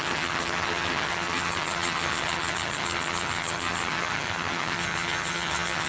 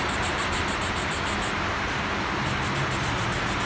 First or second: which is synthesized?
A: first